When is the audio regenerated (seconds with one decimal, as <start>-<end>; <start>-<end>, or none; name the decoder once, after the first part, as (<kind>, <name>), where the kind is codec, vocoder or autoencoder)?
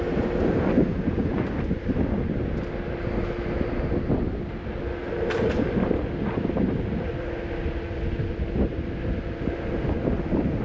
1.2-1.8 (vocoder, Vocos)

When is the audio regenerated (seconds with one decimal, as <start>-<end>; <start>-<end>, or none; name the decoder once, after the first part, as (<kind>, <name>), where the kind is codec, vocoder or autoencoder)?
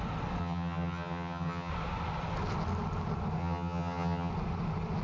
0.4-1.7 (vocoder, HiFi-GAN); 3.4-4.3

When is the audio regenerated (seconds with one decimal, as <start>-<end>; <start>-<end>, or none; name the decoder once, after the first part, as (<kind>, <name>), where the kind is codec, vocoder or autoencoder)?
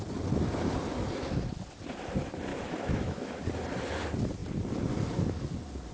2.5-3.4 (autoencoder, DAC-VAE)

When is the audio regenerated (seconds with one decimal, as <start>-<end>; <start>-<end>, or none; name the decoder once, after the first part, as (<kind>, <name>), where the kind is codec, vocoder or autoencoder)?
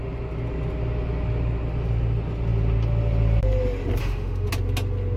4.0-4.5 (autoencoder, DAC-VAE)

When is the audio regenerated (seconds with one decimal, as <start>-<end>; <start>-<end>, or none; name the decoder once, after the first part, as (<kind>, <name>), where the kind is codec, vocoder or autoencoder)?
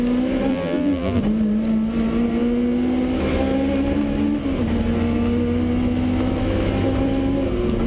0.5-1.2 (vocoder, BigVGAN v2)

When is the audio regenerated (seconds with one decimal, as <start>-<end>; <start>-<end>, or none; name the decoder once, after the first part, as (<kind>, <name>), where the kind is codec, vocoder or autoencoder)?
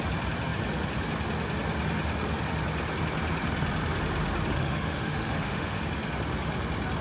4.5-5.8 (autoencoder, DAC-VAE)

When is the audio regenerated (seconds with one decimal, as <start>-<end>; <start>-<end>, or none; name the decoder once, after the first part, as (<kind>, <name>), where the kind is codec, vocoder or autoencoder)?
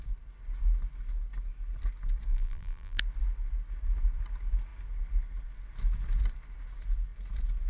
2.3-3.0 (vocoder, BigVGAN v2)